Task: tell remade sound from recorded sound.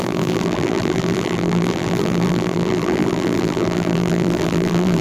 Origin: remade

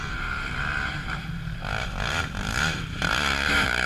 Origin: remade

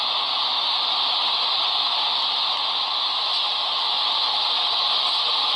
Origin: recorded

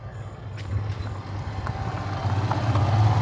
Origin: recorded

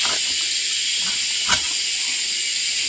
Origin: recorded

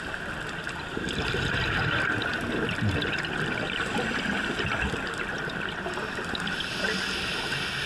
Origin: recorded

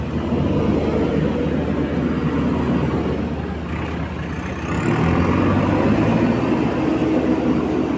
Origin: recorded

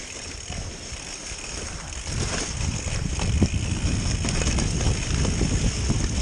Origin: remade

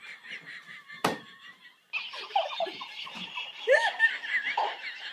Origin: recorded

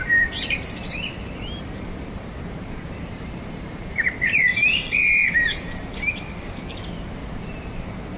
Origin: remade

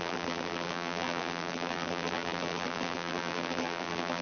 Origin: remade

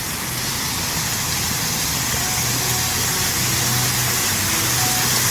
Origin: recorded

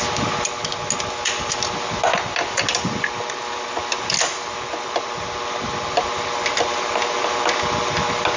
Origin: recorded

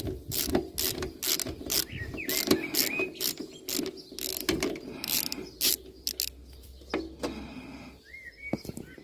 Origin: recorded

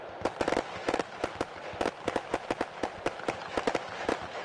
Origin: recorded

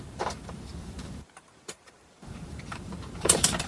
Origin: remade